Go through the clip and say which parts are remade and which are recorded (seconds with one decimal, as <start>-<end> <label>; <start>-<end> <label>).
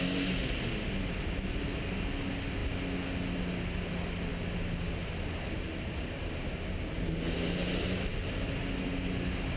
0.0-9.6 recorded